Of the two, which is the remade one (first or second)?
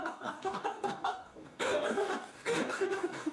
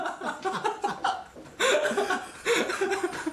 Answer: first